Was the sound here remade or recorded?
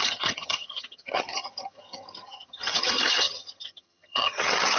remade